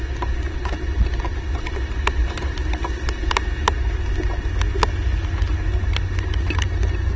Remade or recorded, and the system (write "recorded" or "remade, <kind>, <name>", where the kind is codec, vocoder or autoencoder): recorded